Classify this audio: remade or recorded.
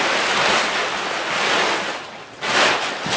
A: recorded